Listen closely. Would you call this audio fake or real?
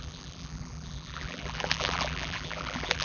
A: fake